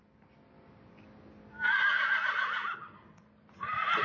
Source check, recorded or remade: recorded